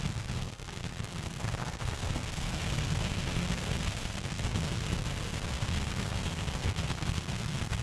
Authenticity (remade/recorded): remade